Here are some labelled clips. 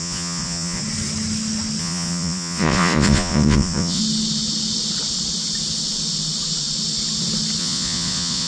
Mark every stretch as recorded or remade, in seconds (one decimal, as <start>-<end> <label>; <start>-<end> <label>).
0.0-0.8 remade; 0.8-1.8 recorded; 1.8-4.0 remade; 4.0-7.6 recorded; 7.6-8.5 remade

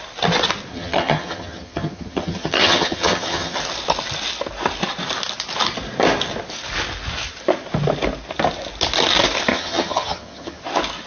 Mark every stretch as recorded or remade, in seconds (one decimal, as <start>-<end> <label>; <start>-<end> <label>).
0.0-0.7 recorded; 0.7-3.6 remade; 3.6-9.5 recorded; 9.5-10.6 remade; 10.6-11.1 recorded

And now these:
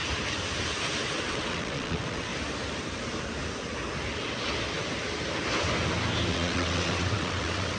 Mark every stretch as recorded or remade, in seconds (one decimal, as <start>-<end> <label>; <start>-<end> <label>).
0.0-1.2 recorded; 1.2-2.3 remade; 2.3-6.3 recorded; 6.3-7.8 remade